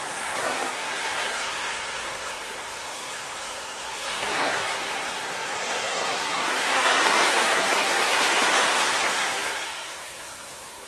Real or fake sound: fake